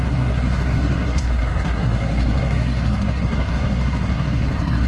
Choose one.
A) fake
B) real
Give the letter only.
A